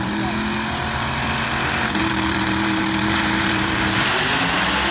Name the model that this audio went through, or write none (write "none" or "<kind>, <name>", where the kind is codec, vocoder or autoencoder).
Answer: vocoder, BigVGAN v2